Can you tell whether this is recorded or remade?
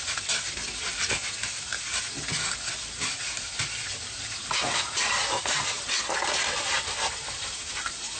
recorded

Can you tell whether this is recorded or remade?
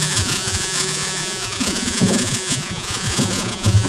remade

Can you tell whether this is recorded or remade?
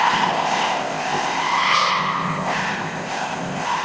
remade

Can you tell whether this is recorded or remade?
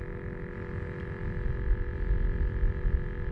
recorded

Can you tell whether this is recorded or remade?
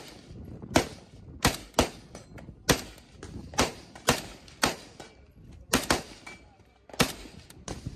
recorded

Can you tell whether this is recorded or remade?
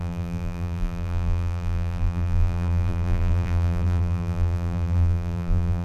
remade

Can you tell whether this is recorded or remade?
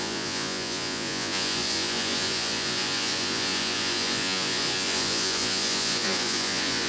remade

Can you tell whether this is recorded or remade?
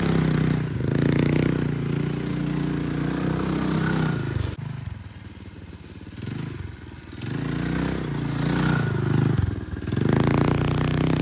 recorded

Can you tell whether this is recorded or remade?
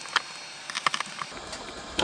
remade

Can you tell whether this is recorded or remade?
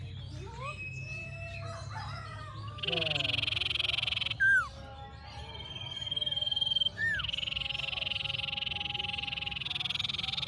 recorded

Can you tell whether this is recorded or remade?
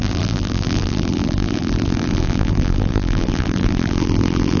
remade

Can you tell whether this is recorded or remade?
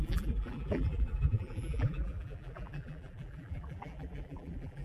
remade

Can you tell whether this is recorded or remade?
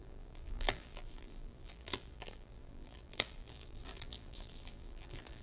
remade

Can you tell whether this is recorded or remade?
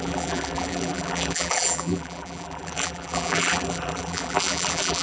remade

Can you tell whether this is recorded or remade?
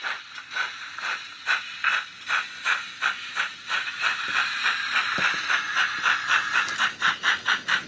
recorded